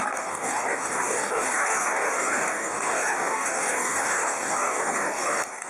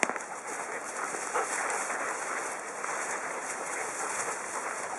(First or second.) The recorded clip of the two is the second